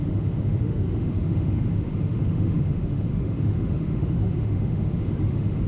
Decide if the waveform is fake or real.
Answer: fake